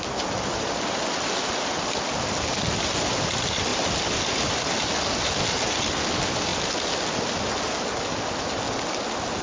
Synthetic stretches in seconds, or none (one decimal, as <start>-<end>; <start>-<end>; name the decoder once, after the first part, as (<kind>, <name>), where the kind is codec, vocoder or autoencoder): none